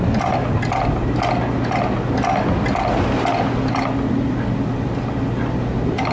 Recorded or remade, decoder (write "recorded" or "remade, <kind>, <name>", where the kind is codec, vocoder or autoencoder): recorded